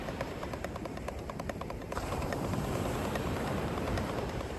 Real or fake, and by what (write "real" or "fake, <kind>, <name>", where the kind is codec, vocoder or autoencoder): fake, vocoder, BigVGAN v2